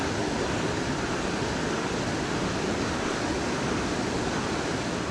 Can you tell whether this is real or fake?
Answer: real